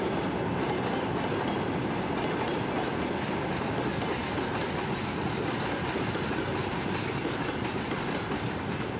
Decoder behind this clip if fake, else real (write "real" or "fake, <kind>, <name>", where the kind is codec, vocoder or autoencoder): real